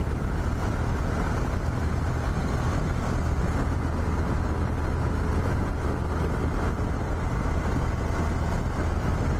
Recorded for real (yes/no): yes